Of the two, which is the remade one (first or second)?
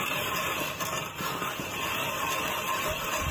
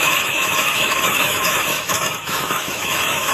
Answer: second